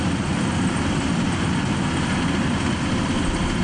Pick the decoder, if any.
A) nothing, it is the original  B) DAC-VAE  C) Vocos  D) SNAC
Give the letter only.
A